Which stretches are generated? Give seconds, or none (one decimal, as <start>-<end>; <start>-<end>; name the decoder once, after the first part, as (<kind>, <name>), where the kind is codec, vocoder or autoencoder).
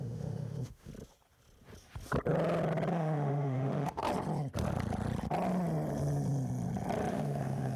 0.0-0.9 (autoencoder, DAC-VAE); 2.9-4.0; 7.1-7.8